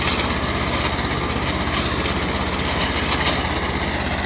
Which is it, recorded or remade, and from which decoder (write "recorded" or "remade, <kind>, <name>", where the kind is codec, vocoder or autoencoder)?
recorded